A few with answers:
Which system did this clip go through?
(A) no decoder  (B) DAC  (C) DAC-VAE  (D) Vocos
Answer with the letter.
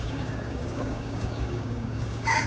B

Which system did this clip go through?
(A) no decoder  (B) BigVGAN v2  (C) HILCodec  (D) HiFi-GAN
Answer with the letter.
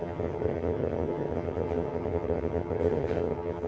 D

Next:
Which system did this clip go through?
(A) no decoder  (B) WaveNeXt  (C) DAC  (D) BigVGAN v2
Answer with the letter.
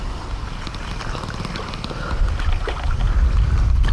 A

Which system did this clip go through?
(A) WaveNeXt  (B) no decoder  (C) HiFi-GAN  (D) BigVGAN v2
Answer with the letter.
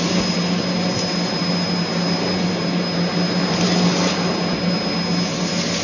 B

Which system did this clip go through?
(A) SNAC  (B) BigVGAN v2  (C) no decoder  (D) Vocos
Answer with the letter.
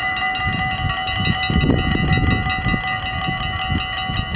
C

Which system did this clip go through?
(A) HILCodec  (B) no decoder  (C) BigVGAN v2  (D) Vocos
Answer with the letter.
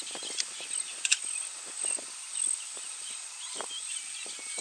B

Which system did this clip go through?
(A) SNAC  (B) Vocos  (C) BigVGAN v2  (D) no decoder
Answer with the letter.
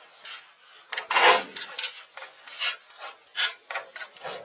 D